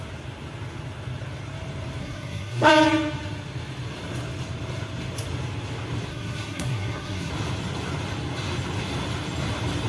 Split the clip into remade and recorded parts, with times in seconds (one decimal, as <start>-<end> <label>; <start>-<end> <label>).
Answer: 0.0-2.0 recorded; 2.0-2.7 remade; 2.7-6.1 recorded; 6.1-7.3 remade; 7.3-9.9 recorded